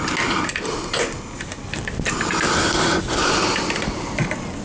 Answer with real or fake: real